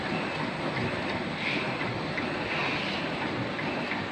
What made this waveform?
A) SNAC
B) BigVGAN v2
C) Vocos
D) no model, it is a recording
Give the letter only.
D